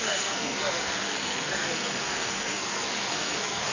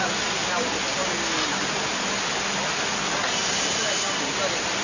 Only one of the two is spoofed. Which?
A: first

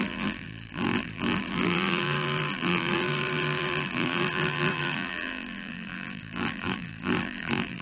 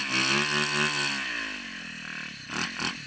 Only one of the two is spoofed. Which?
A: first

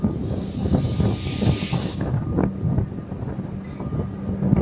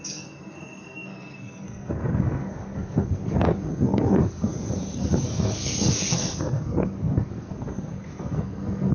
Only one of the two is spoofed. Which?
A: second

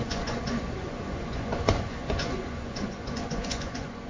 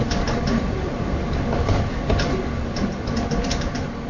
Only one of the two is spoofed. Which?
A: first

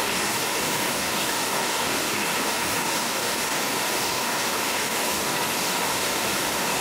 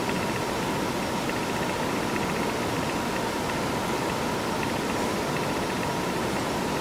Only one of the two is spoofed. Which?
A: first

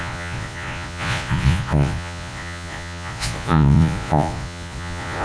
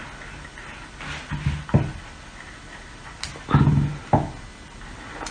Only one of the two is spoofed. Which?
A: first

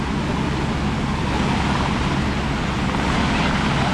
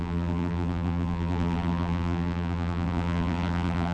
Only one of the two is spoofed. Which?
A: second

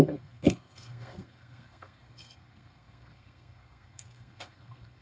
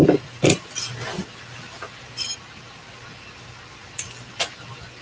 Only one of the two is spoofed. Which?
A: first